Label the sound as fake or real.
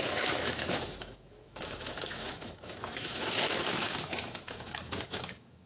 fake